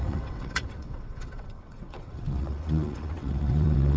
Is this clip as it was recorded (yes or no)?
no